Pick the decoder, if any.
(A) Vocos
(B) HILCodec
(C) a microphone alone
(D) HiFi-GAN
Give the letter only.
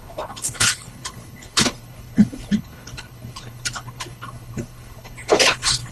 B